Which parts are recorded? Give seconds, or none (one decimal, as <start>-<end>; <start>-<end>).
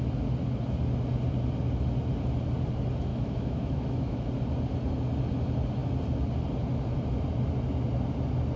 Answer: 0.0-3.1; 4.2-8.6